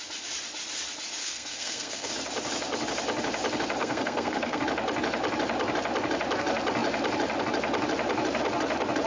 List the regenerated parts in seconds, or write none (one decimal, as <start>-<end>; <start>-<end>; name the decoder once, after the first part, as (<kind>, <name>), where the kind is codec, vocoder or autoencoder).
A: 1.2-2.1 (codec, SNAC); 3.8-4.6